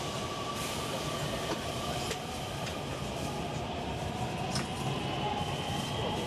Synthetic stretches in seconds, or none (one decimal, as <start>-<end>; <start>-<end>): 0.0-4.7; 5.8-6.3